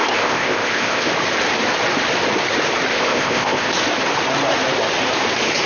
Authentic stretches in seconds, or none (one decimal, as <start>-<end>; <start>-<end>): 1.1-2.9; 3.7-5.7

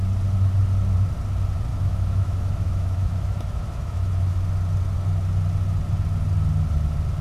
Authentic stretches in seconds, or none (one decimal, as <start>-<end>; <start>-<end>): 0.0-1.7; 4.4-7.2

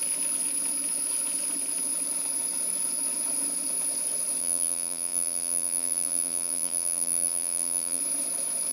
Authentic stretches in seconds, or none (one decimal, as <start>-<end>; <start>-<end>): 0.0-4.4; 8.0-8.7

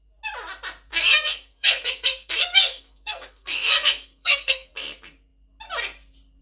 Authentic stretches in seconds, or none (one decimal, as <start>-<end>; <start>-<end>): 0.0-0.9; 4.7-6.4